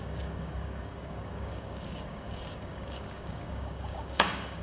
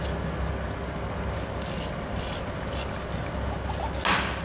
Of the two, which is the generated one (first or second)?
first